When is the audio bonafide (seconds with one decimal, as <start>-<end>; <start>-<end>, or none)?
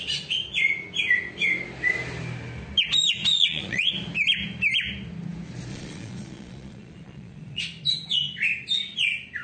0.0-3.3; 3.9-5.7; 7.6-9.4